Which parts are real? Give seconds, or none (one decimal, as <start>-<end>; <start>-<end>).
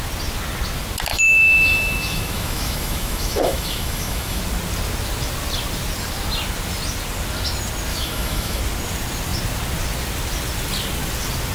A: 0.0-1.1; 4.4-7.9; 8.6-11.5